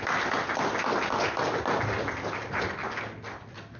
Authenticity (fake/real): real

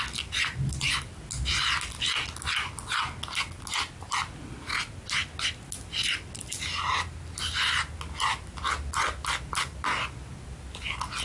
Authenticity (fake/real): real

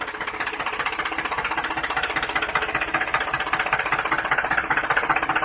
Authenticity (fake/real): real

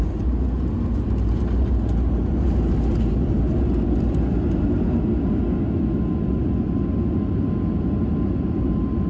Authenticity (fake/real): real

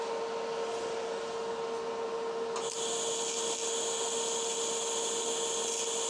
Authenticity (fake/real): real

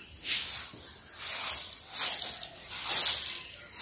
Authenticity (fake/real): real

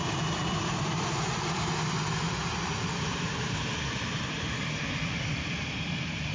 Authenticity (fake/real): fake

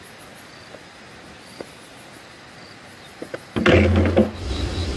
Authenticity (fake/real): real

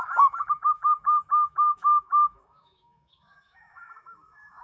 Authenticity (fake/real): fake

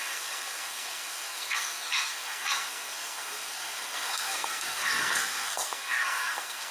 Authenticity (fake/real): fake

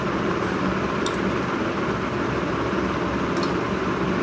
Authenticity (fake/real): real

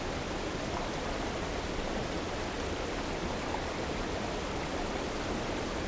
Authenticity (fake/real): real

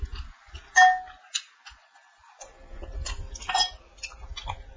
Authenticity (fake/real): real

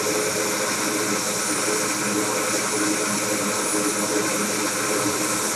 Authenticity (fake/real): real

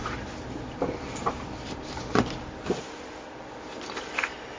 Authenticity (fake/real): fake